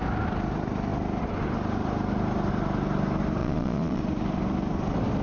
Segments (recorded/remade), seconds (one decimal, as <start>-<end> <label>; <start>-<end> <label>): 0.0-3.4 recorded; 3.4-4.0 remade; 4.0-5.2 recorded